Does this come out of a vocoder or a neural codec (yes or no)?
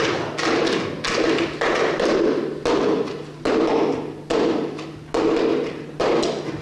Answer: no